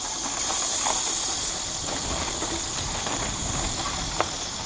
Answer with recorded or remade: recorded